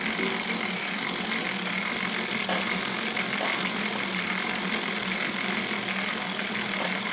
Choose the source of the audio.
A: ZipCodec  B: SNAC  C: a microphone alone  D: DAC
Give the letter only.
C